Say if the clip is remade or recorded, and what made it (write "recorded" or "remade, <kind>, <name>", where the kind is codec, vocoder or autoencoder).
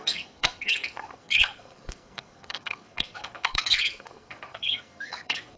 remade, codec, SNAC